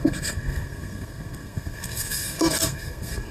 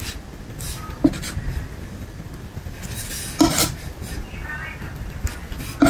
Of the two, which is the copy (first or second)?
first